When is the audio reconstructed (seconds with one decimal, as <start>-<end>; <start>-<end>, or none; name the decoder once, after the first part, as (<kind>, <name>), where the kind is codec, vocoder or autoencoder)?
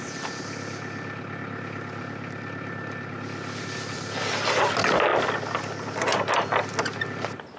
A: none